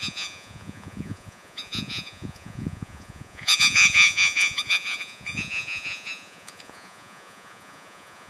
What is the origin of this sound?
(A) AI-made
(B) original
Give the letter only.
A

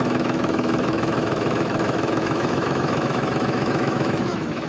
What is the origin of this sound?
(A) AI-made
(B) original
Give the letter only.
A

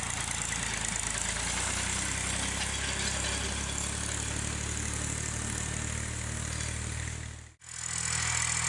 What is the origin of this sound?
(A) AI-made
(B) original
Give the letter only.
B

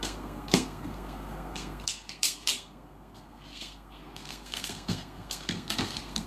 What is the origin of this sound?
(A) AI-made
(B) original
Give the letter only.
A